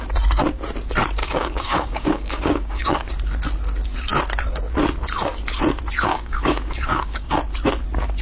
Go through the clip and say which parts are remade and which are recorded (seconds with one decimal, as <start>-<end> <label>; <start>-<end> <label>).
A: 0.0-1.2 recorded; 1.2-3.1 remade; 3.1-6.1 recorded; 6.1-7.3 remade; 7.3-8.2 recorded